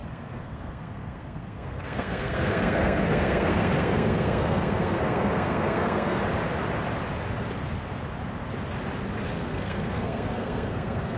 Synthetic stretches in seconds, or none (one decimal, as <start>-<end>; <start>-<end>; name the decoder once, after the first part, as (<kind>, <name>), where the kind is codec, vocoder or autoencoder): 0.0-6.2 (codec, SNAC); 9.3-11.2